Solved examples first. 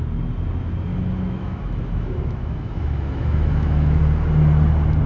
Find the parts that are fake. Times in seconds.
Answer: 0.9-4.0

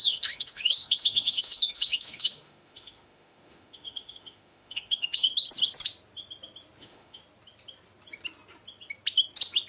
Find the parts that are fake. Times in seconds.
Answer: 0.0-5.3; 6.8-7.2